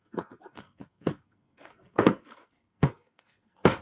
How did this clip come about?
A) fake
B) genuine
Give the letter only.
A